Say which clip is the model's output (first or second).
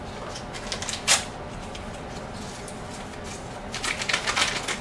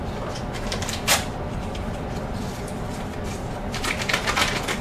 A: second